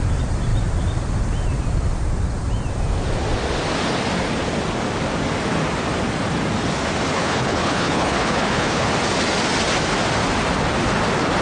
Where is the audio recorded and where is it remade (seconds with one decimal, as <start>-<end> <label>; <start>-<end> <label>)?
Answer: 0.0-7.1 recorded; 7.1-8.9 remade; 8.9-11.4 recorded